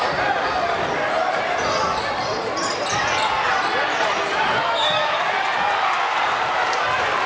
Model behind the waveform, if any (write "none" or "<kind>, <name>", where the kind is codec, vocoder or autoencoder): none